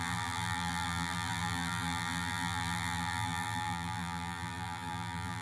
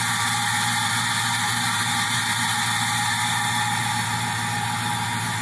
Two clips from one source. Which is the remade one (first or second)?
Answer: first